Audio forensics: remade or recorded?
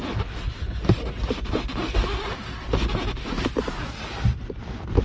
recorded